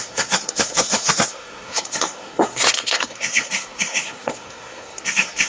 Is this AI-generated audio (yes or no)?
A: yes